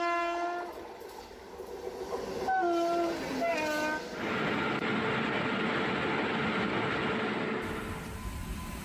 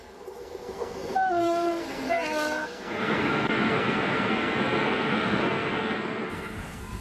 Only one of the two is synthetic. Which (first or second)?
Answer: second